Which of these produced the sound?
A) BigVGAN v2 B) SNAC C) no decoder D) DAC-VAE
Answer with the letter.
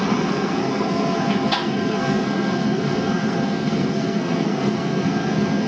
B